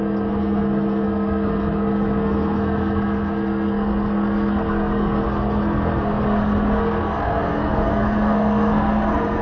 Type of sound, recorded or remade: remade